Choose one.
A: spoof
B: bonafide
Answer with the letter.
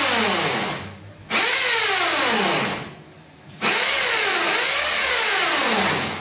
B